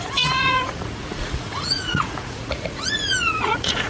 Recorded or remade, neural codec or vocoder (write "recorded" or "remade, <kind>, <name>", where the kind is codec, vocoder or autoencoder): remade, vocoder, Vocos